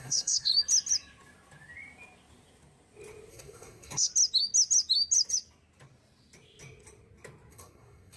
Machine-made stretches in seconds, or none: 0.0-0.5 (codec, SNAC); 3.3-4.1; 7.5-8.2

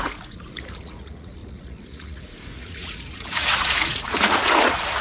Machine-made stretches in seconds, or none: 0.0-5.0 (vocoder, Vocos)